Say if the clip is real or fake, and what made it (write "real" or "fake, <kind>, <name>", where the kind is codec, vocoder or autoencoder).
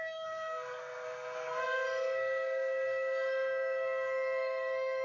fake, codec, SNAC